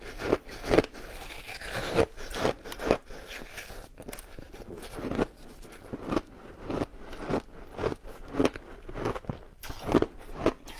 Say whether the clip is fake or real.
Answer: real